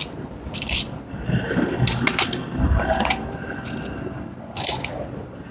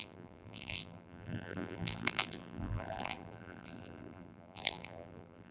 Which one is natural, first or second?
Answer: first